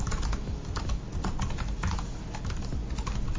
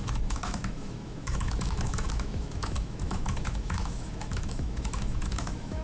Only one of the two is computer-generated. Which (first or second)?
second